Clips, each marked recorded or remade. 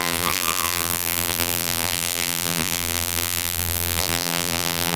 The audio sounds remade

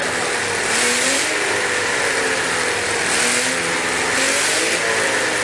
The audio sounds recorded